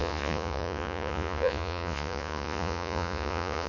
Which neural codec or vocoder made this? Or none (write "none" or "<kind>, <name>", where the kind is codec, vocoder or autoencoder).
vocoder, Vocos